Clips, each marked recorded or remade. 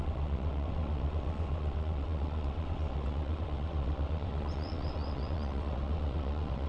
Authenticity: remade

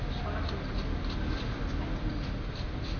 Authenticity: recorded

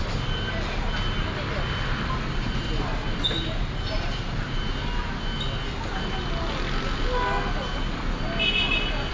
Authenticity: recorded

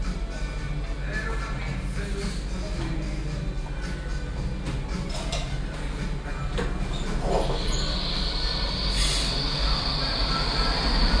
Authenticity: recorded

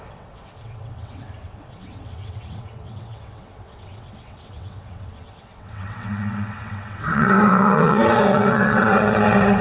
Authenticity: remade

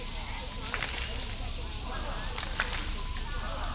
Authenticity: recorded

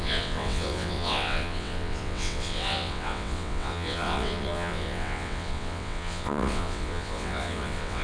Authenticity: remade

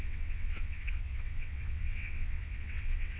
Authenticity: remade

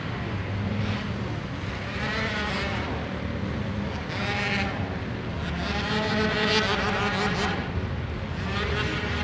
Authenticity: recorded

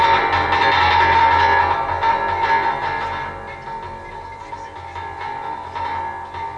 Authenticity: recorded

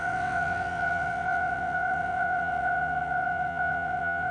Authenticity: remade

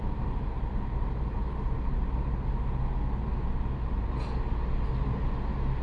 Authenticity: recorded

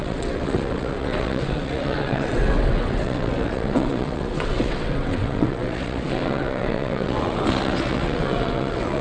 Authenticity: remade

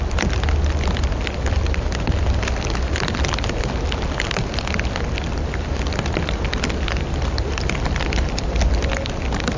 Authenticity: recorded